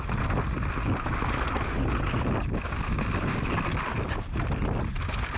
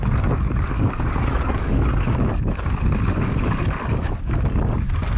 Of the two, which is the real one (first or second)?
first